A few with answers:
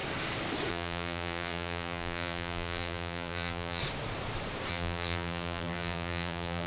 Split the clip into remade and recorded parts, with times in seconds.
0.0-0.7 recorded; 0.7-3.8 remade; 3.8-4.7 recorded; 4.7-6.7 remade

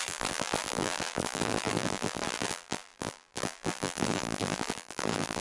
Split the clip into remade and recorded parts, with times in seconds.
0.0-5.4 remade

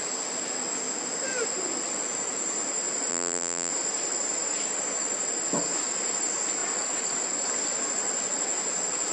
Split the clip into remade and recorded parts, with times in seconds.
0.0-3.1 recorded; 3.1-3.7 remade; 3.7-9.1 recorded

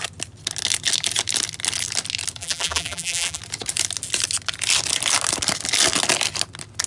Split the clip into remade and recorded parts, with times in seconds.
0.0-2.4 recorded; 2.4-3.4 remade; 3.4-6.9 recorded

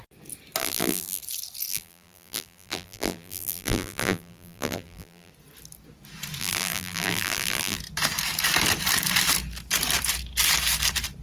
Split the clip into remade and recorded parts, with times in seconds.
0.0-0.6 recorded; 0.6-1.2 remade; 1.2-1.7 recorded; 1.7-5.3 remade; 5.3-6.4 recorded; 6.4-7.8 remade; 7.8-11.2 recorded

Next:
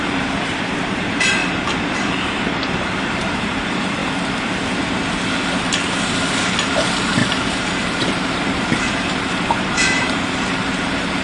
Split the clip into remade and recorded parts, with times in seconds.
0.0-1.4 remade; 1.4-2.7 recorded; 2.7-4.0 remade; 4.0-5.7 recorded; 5.7-11.2 remade

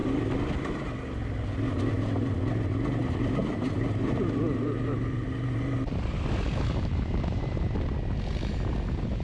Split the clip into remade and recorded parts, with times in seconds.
0.0-3.0 recorded; 3.0-7.7 remade; 7.7-9.2 recorded

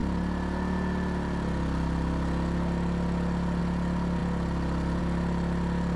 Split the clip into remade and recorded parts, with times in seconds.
0.0-6.0 recorded